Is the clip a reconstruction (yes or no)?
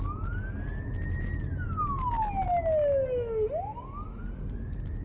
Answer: no